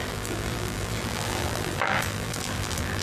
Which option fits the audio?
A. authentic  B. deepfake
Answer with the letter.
B